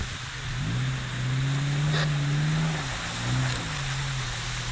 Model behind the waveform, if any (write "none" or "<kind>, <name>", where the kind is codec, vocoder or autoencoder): none